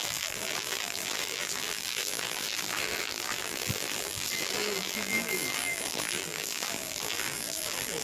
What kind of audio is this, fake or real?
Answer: fake